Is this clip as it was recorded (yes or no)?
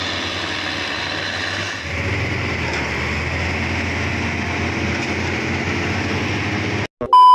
yes